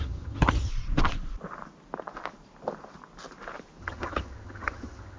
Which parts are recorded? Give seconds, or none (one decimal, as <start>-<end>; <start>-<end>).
0.7-3.8